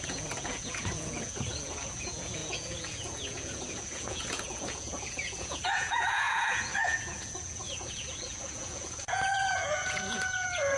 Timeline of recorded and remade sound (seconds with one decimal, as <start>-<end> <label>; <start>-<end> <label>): 0.0-10.8 remade